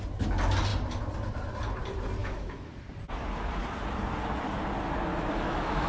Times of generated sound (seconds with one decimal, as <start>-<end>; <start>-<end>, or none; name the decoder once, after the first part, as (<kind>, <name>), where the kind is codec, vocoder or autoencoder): 2.2-2.7 (autoencoder, DAC-VAE); 5.1-5.9